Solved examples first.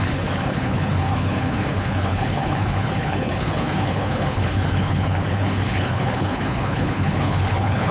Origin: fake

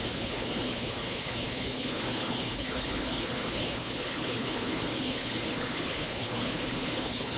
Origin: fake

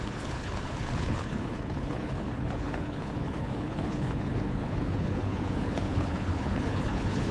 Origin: fake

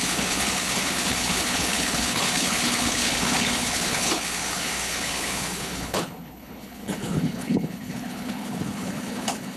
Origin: fake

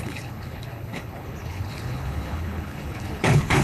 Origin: fake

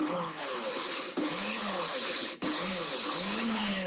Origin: fake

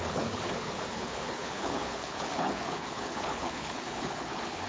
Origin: fake